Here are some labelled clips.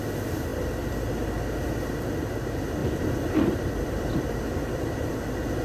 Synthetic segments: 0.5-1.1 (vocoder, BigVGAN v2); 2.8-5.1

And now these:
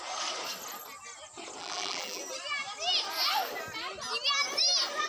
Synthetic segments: 1.6-2.2 (vocoder, BigVGAN v2)